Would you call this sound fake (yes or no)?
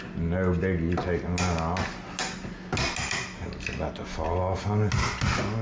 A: no